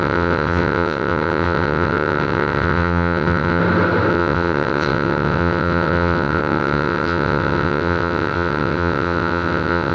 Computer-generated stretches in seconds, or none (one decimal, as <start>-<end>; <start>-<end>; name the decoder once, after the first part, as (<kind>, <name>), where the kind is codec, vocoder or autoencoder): 0.0-3.6 (vocoder, WaveNeXt); 4.1-9.9